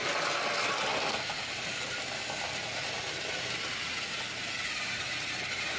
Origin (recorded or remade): recorded